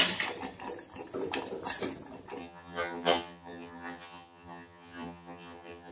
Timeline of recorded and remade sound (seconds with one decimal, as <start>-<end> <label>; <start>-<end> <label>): 0.0-2.4 recorded; 2.4-5.9 remade